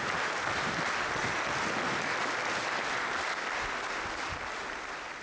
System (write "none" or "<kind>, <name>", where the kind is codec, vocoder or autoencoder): none